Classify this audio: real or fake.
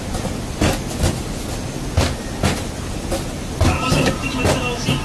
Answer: real